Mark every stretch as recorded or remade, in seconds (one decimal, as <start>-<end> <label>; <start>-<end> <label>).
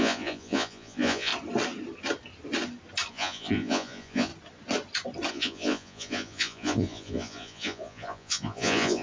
0.0-1.3 remade; 1.3-3.1 recorded; 3.1-4.3 remade; 4.3-5.3 recorded; 5.3-9.0 remade